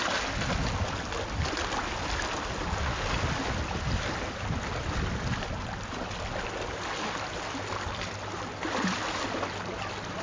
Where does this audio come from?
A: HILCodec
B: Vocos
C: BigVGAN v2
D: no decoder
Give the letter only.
D